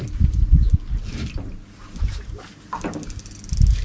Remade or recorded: recorded